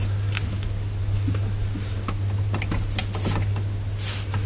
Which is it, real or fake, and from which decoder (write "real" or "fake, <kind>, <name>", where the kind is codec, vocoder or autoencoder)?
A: real